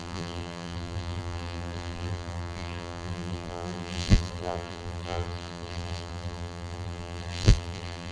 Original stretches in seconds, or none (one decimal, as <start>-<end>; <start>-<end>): none